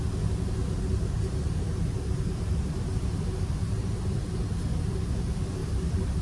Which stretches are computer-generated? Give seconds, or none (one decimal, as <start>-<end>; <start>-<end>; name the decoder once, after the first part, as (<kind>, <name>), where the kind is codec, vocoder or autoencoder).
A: 0.9-4.6 (vocoder, BigVGAN v2); 5.6-6.2